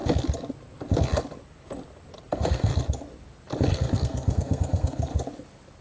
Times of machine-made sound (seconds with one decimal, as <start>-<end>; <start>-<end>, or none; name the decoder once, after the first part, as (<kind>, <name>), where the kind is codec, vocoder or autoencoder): 2.3-2.7 (codec, SNAC); 3.7-5.1